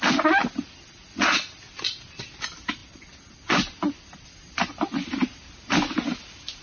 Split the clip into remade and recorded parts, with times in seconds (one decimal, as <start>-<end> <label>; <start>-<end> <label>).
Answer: 0.0-6.6 recorded